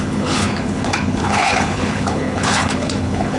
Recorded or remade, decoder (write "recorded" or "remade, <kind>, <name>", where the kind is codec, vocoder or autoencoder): remade, codec, HILCodec